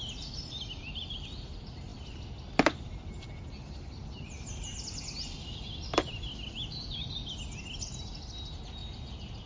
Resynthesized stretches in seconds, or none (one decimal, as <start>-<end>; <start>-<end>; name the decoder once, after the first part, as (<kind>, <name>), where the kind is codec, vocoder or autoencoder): none